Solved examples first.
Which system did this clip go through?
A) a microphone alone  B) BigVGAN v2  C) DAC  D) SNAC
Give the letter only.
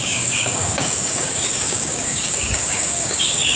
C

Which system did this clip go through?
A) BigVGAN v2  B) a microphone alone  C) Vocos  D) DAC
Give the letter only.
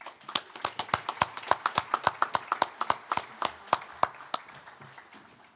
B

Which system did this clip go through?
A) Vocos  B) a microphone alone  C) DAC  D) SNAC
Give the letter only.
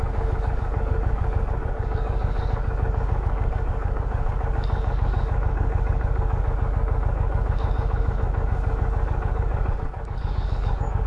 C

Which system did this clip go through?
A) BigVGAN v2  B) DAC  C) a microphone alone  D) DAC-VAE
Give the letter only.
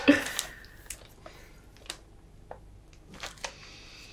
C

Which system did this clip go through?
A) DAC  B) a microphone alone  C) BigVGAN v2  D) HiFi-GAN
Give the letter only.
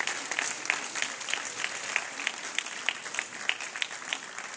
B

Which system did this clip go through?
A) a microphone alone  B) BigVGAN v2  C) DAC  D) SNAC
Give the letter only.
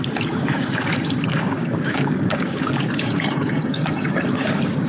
C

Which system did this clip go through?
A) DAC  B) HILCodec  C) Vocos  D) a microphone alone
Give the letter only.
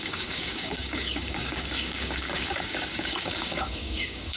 A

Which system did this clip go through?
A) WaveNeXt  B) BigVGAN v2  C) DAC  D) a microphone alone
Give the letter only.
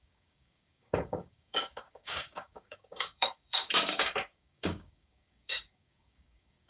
C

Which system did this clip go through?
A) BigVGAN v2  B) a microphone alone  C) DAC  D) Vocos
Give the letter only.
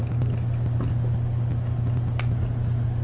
B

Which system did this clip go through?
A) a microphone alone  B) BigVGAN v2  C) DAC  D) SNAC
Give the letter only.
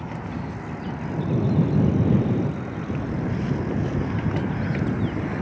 A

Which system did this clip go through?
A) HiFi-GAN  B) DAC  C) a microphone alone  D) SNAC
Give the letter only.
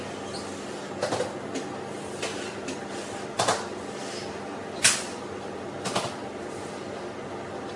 C